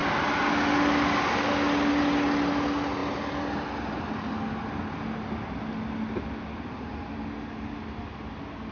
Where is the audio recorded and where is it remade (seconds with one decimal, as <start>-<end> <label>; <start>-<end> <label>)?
0.0-8.7 recorded